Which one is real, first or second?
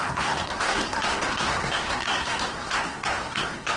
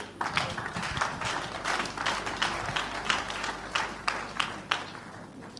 second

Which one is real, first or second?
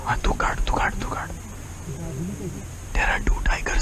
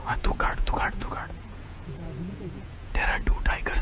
first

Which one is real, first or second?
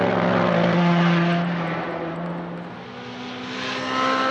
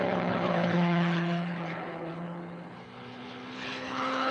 first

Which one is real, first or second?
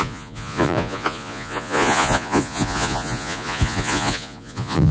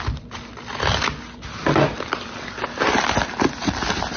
second